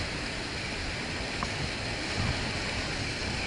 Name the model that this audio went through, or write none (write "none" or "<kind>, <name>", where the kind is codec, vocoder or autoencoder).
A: none